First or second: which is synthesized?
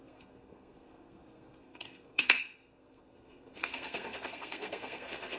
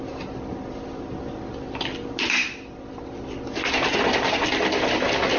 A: first